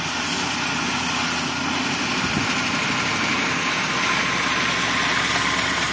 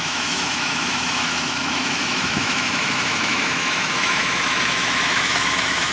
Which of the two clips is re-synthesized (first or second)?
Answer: second